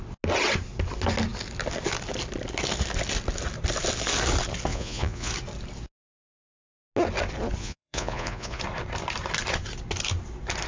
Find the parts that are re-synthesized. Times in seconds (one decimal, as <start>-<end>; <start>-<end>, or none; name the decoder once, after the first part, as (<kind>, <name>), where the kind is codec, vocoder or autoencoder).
4.7-5.3 (vocoder, Vocos); 7.6-8.6